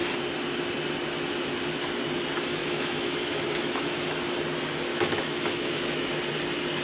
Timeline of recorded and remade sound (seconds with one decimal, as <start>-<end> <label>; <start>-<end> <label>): 0.0-2.6 recorded; 2.6-4.1 remade; 4.1-4.9 recorded; 4.9-6.2 remade; 6.2-6.8 recorded